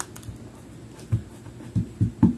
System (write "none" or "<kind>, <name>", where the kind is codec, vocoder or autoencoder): none